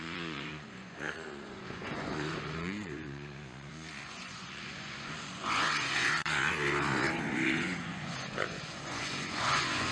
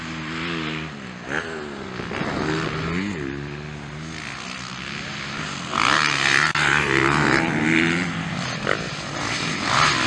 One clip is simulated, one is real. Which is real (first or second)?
second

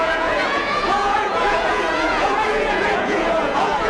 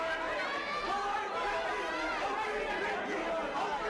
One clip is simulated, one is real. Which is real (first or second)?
second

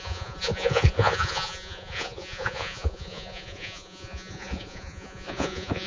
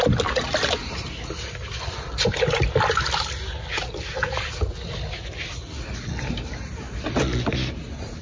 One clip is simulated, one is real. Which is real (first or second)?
second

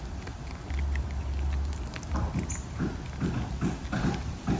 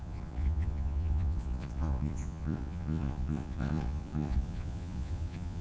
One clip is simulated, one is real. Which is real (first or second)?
first